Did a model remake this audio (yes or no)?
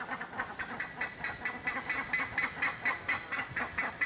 no